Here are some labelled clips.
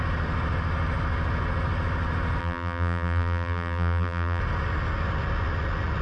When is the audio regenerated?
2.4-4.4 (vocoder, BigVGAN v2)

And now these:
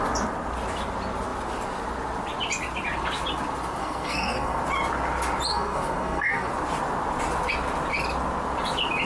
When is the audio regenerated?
3.8-4.6 (codec, SNAC); 5.5-6.5

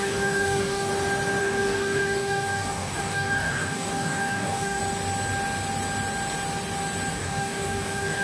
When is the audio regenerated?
0.0-0.9 (codec, DAC); 1.4-4.8; 7.1-8.2

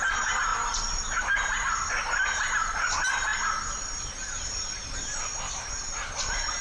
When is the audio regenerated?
none

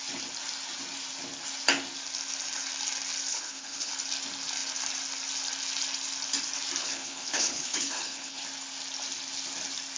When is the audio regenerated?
3.3-3.9 (codec, HILCodec); 6.8-8.4

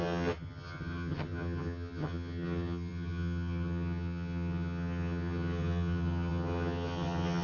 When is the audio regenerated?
0.0-7.4 (vocoder, HiFi-GAN)

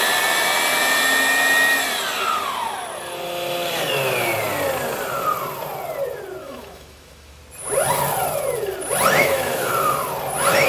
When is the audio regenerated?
6.4-7.4 (autoencoder, DAC-VAE); 9.2-9.7

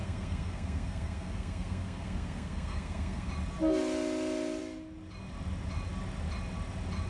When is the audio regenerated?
0.0-3.3 (codec, SNAC)